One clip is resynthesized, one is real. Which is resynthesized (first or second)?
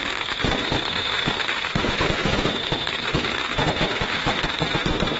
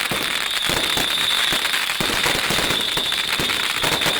first